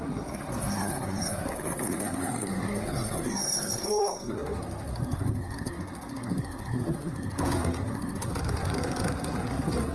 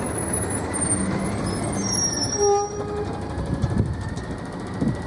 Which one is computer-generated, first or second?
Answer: first